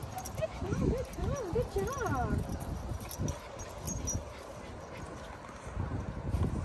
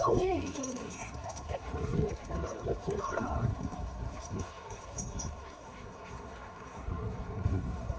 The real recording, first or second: first